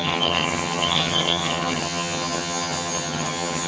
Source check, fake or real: fake